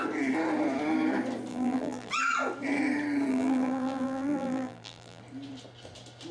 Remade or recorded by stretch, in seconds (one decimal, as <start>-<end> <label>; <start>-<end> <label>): 0.0-1.5 recorded; 1.5-2.1 remade; 2.1-3.3 recorded; 3.3-5.2 remade; 5.2-6.3 recorded